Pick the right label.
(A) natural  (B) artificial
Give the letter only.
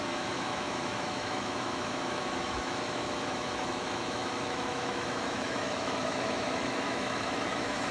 B